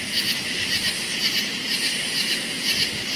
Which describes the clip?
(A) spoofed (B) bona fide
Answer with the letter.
B